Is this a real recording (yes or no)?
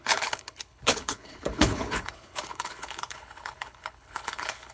no